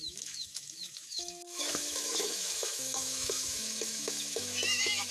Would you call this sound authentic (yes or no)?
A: no